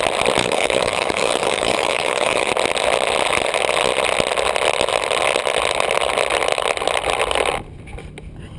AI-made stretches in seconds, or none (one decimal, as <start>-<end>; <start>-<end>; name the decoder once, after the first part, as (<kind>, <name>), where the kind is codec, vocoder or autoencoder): 0.4-2.5 (codec, DAC)